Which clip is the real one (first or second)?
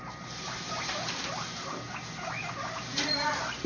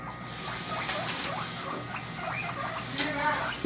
second